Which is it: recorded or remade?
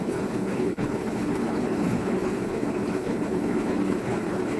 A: remade